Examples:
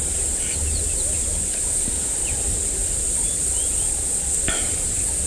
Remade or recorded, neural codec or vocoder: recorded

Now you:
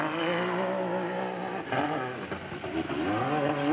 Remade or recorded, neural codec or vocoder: recorded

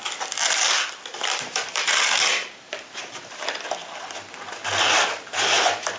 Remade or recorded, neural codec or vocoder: remade, vocoder, BigVGAN v2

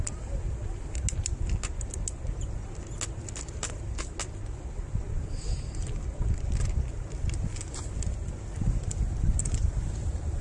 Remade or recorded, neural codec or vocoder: recorded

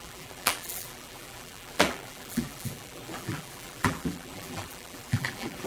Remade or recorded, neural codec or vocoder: remade, vocoder, BigVGAN v2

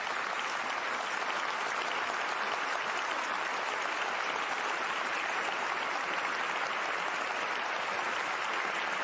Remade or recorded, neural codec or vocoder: recorded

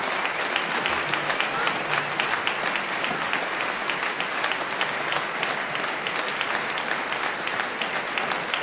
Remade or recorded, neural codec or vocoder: recorded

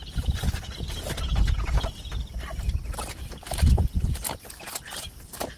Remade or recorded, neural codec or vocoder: remade, vocoder, BigVGAN v2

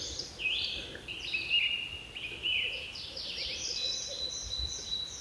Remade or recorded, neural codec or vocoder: recorded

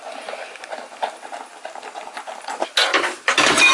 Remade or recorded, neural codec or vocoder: recorded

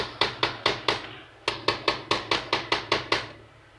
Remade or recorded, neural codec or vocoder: recorded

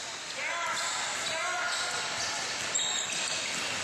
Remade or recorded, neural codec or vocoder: recorded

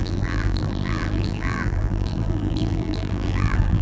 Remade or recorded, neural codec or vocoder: remade, vocoder, BigVGAN v2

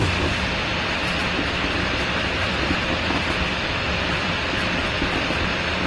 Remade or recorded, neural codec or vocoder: remade, vocoder, BigVGAN v2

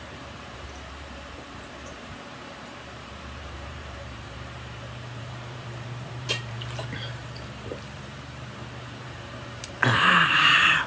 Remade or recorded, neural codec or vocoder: remade, vocoder, BigVGAN v2